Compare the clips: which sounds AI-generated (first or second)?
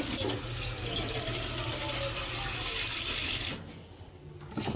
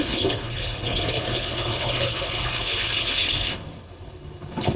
second